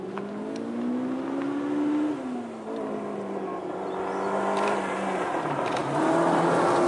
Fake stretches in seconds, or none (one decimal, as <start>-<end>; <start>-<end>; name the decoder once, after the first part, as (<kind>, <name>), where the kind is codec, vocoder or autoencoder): none